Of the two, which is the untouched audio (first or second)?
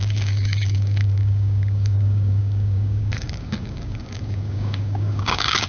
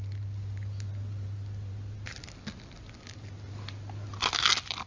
second